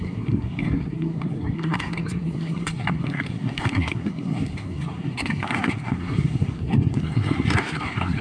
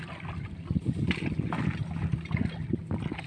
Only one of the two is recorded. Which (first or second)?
second